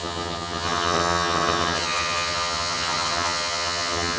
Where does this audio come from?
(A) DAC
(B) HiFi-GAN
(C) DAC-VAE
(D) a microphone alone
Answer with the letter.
B